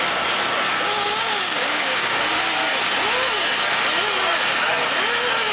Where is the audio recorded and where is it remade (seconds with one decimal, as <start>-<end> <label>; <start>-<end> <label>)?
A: 0.0-0.7 recorded; 0.7-2.2 remade; 2.2-5.5 recorded